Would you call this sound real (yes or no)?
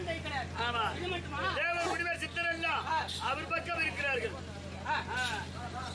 yes